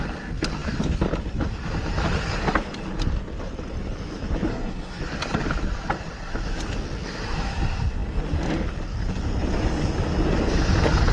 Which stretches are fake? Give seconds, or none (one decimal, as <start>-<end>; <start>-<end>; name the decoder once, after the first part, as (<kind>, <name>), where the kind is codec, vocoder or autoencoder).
4.5-5.0 (codec, SNAC)